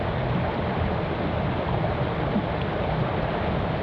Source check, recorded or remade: recorded